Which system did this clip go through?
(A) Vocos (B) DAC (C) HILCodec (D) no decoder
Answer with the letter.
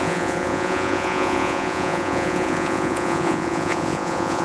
A